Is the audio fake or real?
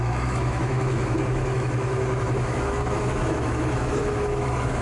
fake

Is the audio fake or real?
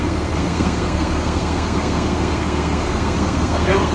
fake